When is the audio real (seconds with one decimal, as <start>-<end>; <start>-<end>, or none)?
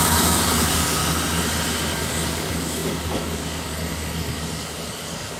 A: 1.0-2.0